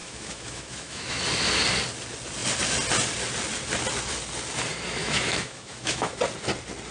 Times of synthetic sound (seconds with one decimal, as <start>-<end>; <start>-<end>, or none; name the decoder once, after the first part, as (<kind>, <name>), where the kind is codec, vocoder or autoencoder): 0.0-1.2 (autoencoder, DAC-VAE); 5.0-6.2